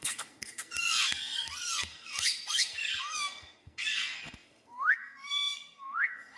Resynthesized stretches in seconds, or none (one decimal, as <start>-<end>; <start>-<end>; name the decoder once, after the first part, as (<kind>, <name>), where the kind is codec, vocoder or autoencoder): 0.0-6.4 (codec, SNAC)